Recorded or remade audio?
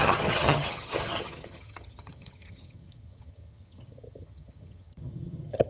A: remade